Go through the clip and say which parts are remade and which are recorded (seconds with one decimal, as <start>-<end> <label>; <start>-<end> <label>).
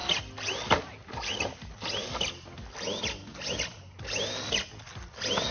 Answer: 0.0-5.5 recorded